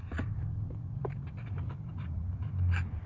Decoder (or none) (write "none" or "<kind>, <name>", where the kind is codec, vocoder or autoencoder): none